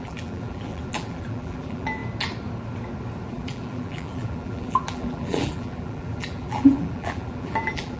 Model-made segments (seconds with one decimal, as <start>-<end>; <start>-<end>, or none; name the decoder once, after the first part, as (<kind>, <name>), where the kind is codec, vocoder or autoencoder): 0.0-2.0 (vocoder, BigVGAN v2); 3.3-8.0